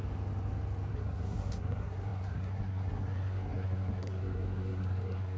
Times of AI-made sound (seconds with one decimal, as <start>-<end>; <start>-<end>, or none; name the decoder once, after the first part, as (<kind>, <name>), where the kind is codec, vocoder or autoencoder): 0.9-5.4 (codec, SNAC)